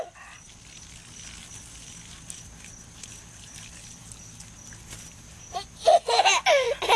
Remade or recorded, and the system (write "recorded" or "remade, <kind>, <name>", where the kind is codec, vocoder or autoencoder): recorded